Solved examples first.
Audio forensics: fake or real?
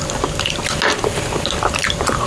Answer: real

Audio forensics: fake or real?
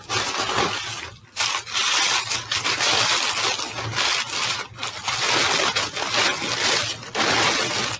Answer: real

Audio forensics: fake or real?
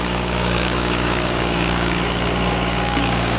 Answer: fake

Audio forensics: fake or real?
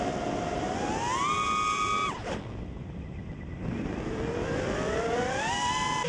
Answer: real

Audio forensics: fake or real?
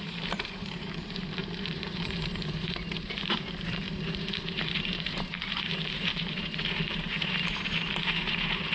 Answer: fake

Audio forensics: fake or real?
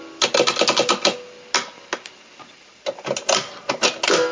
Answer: real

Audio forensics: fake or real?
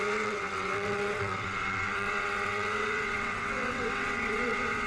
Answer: fake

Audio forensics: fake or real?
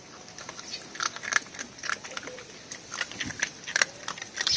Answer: real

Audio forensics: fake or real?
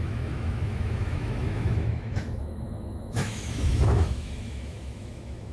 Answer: fake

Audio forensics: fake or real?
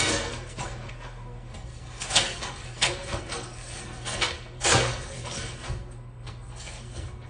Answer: fake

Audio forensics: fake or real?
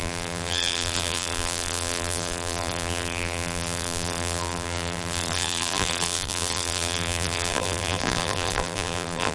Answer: fake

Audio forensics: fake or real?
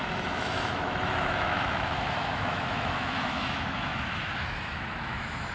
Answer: fake